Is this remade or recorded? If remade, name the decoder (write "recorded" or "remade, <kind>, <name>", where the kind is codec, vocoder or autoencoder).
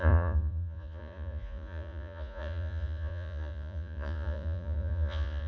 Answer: remade, vocoder, Vocos